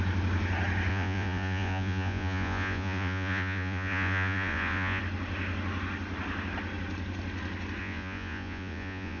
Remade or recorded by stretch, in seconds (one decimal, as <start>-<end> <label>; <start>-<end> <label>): 0.0-0.9 recorded; 0.9-5.0 remade; 5.0-7.8 recorded; 7.8-9.2 remade